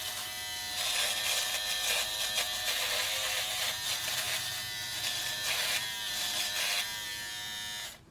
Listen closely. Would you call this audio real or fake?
real